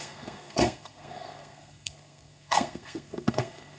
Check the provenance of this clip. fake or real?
fake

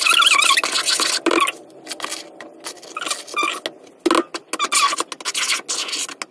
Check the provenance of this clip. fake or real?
real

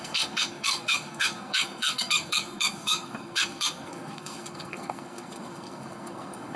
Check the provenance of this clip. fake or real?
fake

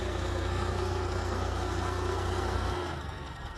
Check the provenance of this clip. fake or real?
fake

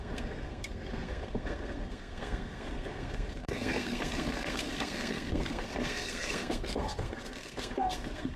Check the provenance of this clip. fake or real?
fake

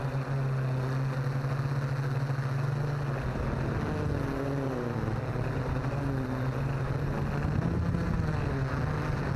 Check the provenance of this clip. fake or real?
real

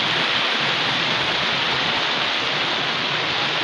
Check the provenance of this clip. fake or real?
real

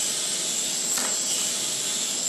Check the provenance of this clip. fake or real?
real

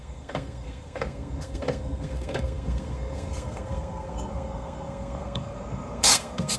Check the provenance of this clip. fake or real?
fake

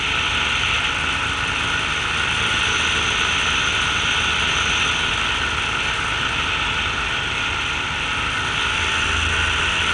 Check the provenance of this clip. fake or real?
real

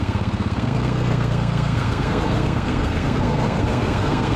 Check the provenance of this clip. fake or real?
fake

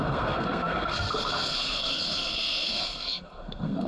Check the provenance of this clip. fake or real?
fake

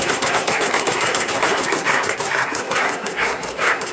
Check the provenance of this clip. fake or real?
fake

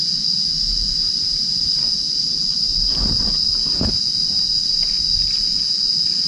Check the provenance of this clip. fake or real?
real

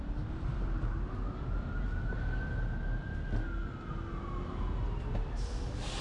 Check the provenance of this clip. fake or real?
real